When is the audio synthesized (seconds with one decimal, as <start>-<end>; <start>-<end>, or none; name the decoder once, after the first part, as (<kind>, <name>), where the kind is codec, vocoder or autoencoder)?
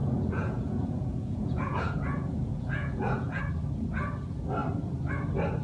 0.0-3.4 (vocoder, Vocos)